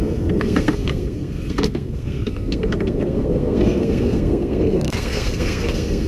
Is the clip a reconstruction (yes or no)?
yes